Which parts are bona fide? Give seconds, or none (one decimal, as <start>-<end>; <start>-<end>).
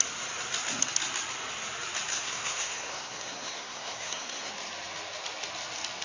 0.0-2.1; 4.5-6.0